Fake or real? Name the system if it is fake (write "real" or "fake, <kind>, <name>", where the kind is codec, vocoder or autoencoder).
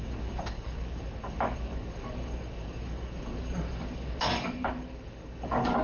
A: fake, codec, DAC